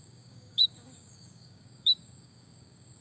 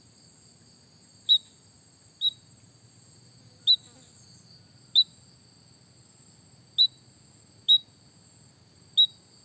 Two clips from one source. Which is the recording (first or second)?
second